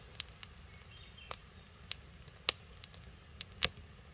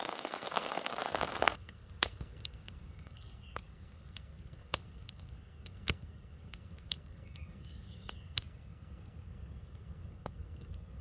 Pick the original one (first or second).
first